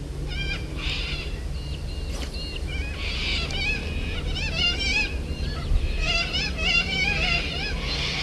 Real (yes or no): yes